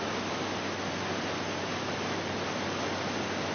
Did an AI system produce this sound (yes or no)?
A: no